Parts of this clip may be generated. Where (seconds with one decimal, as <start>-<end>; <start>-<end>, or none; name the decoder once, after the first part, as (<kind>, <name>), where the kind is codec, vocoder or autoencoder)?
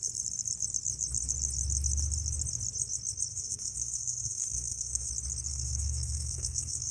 3.3-5.1 (codec, SNAC); 5.5-6.9